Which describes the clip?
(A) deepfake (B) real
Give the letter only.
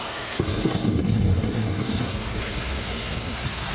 A